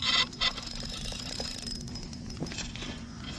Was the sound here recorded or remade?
remade